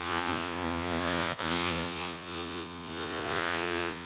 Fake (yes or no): yes